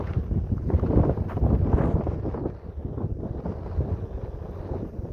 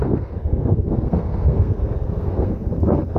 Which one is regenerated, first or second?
second